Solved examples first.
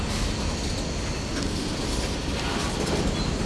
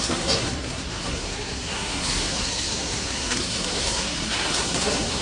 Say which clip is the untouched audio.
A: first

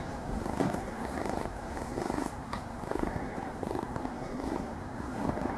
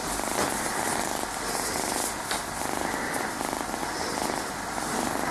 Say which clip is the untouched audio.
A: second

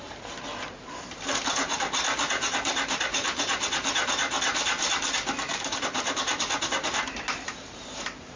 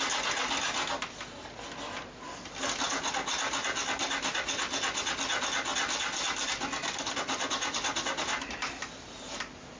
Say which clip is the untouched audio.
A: second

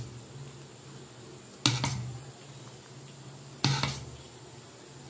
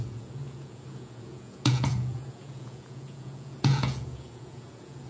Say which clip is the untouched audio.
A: first